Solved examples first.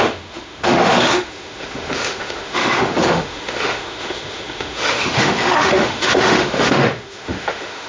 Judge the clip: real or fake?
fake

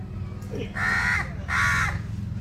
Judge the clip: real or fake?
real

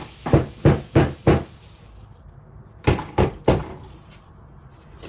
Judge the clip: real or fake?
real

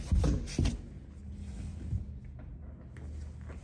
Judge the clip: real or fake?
real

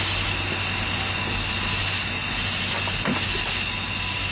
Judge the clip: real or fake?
real